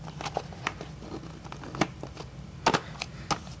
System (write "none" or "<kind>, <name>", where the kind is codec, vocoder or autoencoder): none